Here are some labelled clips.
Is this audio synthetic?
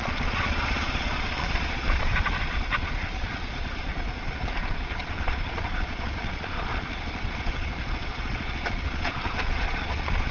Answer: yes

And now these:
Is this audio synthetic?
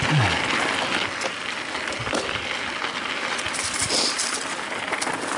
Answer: no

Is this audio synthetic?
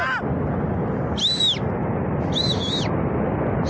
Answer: no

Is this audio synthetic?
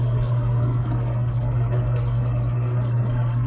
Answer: yes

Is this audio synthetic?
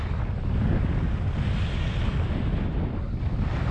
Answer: no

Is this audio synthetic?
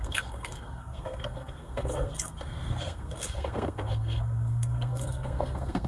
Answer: yes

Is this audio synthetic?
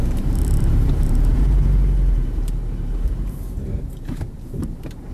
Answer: yes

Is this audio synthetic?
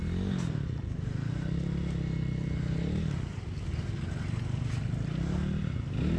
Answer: no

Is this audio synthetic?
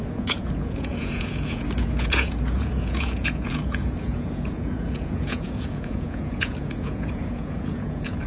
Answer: yes